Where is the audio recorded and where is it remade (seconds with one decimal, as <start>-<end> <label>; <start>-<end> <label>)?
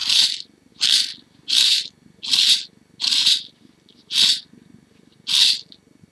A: 0.0-6.1 recorded